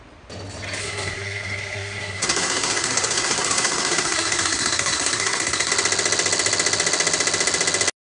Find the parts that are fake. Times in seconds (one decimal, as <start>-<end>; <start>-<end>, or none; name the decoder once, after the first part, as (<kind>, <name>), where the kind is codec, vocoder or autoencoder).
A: 0.8-5.7 (codec, SNAC)